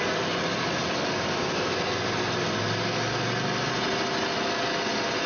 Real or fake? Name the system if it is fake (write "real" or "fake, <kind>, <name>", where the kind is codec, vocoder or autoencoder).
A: real